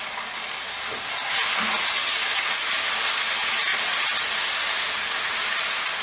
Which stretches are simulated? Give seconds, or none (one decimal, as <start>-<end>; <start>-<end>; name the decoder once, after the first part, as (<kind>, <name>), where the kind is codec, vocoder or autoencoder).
none